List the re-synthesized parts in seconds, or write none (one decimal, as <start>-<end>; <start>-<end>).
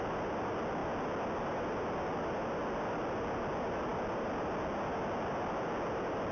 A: none